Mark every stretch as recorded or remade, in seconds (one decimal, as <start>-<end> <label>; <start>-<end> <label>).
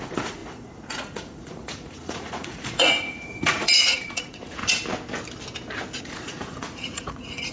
0.0-4.6 remade; 4.6-6.0 recorded; 6.0-7.5 remade